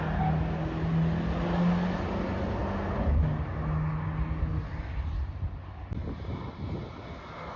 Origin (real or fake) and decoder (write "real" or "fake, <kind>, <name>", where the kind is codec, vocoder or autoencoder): real